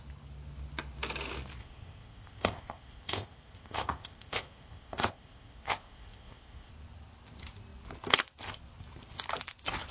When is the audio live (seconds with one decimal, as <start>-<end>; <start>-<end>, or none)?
0.0-1.6; 6.7-9.9